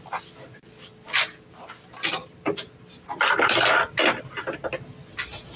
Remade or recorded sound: recorded